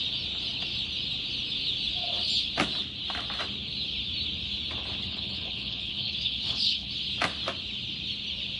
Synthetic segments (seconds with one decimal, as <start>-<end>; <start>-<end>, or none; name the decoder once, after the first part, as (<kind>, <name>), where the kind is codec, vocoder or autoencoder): 5.0-6.9 (codec, HILCodec)